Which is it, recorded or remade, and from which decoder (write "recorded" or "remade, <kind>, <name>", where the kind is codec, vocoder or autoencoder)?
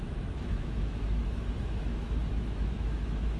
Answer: remade, autoencoder, DAC-VAE